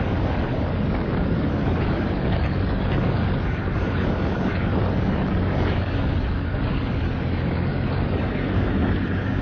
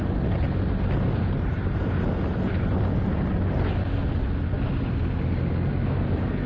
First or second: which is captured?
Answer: second